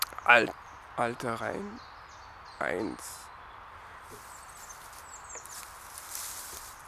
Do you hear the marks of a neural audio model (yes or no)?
no